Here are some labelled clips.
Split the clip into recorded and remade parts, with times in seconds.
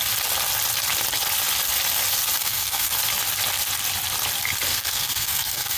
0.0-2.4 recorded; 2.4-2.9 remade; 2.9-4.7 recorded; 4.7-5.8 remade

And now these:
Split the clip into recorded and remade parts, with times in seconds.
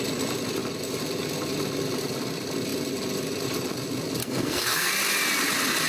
0.0-4.2 recorded; 4.2-4.9 remade; 4.9-5.9 recorded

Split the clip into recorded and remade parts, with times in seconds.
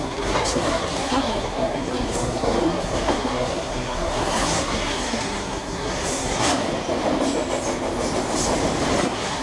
0.0-6.6 remade; 6.6-9.0 recorded; 9.0-9.4 remade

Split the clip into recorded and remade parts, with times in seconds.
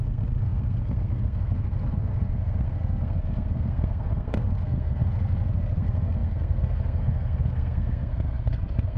0.0-9.0 remade